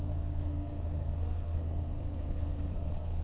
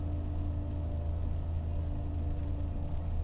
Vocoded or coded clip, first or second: first